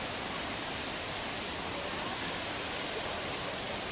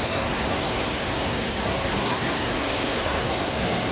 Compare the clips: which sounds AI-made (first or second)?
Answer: second